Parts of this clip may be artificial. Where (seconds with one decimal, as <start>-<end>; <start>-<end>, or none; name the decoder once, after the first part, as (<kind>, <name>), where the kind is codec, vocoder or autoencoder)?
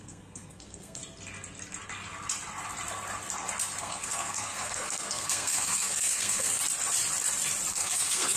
0.0-1.0 (codec, SNAC); 3.8-6.6; 7.7-8.4